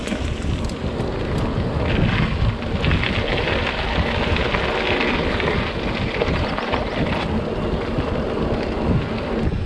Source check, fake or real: real